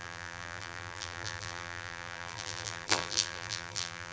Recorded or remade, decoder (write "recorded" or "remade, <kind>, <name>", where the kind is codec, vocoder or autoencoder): remade, vocoder, BigVGAN v2